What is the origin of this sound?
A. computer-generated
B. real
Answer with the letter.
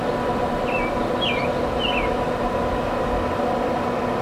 B